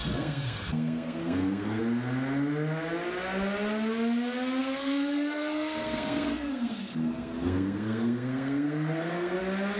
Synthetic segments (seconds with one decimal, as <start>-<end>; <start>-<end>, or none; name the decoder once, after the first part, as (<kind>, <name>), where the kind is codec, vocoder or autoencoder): 0.0-1.8 (codec, SNAC); 4.6-9.4